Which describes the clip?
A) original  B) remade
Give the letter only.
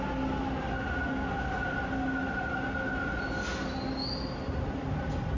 A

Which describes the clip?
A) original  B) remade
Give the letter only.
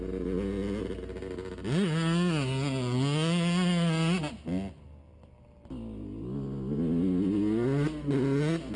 A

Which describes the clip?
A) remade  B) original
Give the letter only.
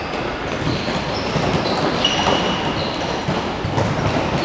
B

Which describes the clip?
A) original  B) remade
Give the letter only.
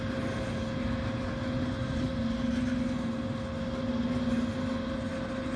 A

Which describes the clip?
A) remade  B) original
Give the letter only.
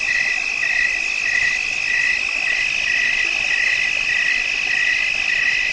B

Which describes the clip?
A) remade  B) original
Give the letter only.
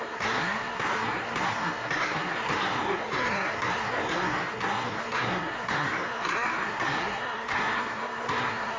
A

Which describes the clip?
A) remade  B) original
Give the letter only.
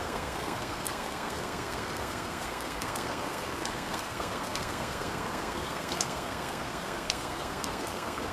A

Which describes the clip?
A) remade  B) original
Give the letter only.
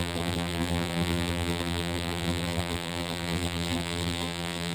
A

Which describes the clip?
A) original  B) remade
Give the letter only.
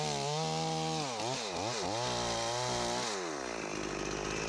A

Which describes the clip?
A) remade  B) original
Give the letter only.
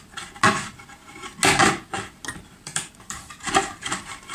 B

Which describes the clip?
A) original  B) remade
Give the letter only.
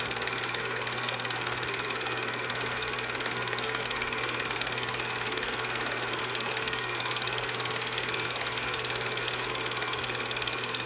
B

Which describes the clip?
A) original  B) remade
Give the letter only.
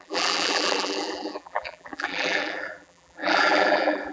B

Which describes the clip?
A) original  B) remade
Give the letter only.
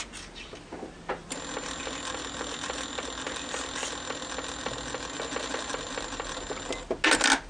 A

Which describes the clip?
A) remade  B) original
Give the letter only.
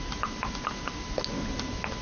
B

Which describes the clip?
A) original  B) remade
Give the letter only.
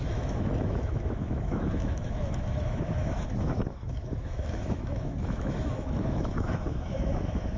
B